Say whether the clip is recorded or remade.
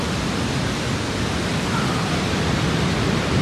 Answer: remade